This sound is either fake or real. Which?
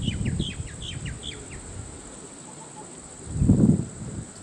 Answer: real